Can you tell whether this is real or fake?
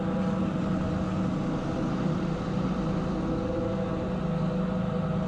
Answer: real